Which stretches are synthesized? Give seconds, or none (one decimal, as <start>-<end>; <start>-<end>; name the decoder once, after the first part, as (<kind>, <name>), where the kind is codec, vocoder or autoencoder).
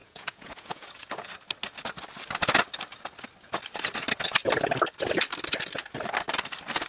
0.0-1.3 (vocoder, Vocos)